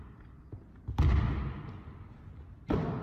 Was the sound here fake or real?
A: real